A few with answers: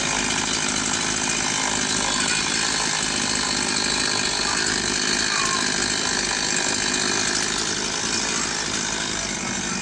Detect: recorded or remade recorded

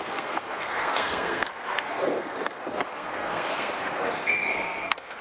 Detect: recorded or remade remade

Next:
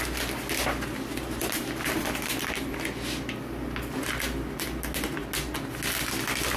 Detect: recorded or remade recorded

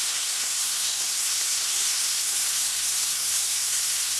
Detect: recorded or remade remade